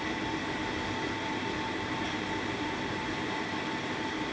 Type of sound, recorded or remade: remade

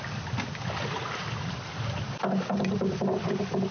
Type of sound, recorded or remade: recorded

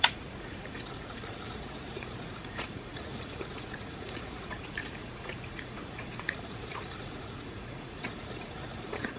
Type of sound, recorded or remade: remade